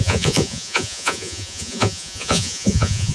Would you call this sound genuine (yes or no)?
no